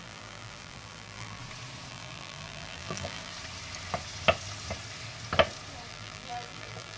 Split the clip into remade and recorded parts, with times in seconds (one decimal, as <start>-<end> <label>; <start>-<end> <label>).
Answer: 0.0-1.4 remade; 1.4-1.9 recorded; 1.9-3.3 remade; 3.3-5.9 recorded; 5.9-7.0 remade